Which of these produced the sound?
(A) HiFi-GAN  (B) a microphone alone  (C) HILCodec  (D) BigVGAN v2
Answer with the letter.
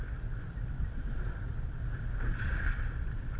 B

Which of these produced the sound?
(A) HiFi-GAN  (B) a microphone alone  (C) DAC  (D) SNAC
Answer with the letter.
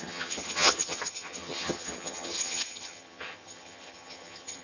A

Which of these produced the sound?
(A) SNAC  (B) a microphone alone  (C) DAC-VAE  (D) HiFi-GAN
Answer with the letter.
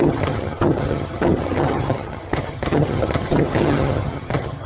D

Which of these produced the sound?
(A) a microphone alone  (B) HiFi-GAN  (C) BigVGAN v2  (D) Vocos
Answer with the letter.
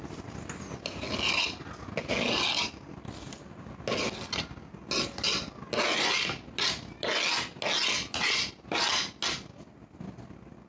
A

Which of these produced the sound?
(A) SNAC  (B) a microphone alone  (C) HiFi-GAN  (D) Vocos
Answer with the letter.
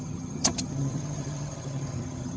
C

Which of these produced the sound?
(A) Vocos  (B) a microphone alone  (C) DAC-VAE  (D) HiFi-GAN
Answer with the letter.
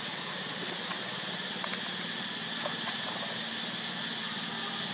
B